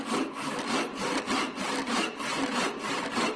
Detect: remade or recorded recorded